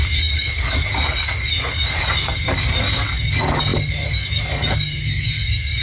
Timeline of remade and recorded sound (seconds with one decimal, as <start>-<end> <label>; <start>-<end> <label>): 0.0-5.8 remade